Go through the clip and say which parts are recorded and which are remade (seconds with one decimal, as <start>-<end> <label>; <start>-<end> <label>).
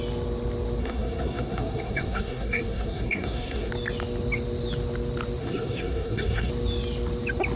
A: 0.0-0.8 recorded; 0.8-3.7 remade; 3.7-5.4 recorded; 5.4-6.5 remade; 6.5-7.6 recorded